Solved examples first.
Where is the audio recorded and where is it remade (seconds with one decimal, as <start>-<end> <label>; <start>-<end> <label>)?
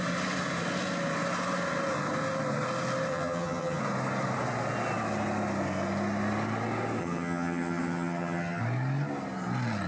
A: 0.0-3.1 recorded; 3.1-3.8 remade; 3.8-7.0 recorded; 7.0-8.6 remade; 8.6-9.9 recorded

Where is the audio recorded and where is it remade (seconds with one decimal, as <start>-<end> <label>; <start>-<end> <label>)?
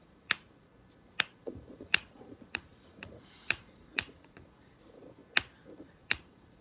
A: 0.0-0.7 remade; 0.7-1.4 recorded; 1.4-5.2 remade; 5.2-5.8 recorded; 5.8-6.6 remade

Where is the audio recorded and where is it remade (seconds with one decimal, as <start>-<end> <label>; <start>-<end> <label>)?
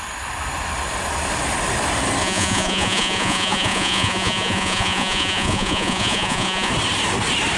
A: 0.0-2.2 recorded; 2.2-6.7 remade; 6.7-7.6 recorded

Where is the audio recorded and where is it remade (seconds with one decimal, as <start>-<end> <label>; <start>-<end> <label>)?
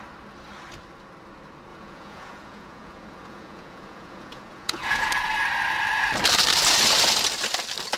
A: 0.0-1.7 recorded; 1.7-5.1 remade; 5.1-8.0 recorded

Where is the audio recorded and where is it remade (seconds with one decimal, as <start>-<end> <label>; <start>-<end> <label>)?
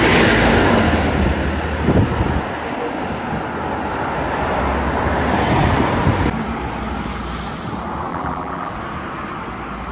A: 0.0-8.1 recorded; 8.1-8.7 remade; 8.7-9.9 recorded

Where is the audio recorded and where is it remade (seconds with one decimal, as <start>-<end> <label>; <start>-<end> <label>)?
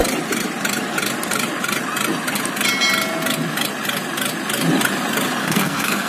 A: 0.0-5.4 recorded; 5.4-6.1 remade